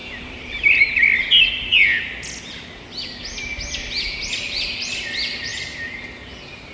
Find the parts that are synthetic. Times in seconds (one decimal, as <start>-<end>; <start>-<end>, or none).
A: 0.0-0.8; 5.5-6.0